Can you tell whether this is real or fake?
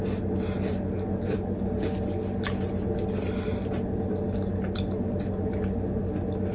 real